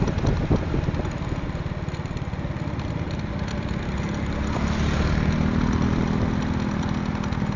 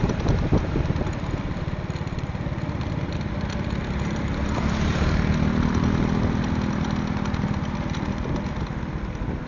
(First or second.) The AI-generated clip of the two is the second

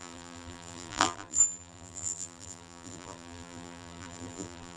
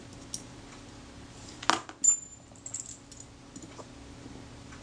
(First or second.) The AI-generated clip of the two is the first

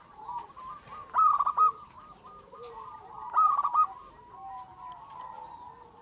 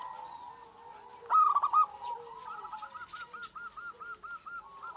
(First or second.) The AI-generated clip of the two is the first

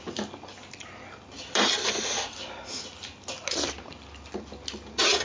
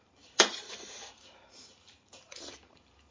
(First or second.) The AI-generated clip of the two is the second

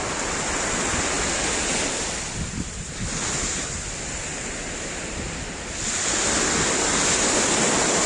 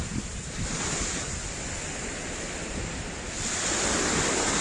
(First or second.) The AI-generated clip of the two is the second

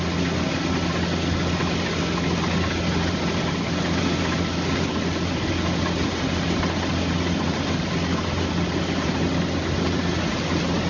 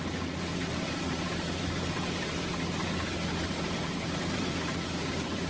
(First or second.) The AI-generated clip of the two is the second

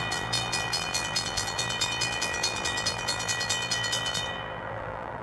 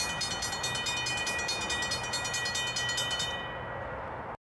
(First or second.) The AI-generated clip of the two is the first